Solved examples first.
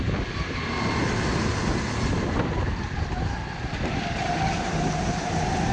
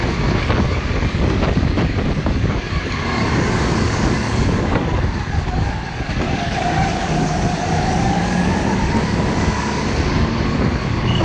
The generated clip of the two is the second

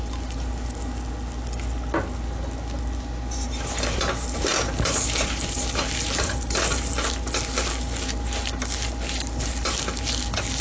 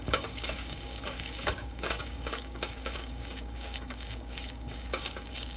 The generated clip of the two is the second